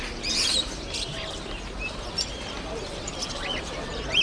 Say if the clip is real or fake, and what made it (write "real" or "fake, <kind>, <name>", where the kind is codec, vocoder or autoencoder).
fake, vocoder, BigVGAN v2